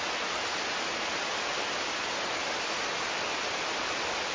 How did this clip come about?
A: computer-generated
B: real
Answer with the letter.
B